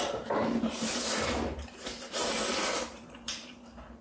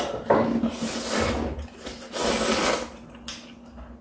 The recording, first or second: second